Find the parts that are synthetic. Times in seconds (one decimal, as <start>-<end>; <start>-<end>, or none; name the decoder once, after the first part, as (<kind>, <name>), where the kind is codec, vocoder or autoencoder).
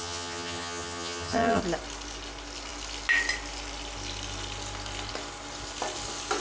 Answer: 0.0-1.6 (vocoder, HiFi-GAN)